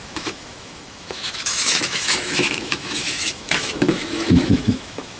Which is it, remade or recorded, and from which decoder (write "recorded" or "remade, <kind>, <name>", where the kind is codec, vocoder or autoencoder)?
remade, autoencoder, DAC-VAE